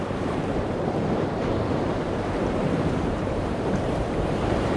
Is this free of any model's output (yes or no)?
no